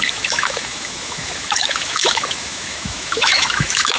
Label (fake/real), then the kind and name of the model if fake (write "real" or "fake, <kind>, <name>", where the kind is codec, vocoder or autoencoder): fake, autoencoder, DAC-VAE